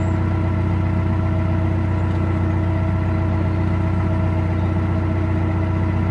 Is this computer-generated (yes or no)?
no